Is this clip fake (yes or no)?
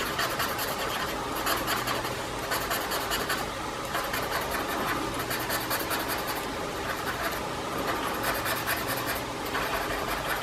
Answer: no